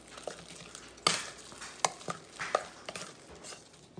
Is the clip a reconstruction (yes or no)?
no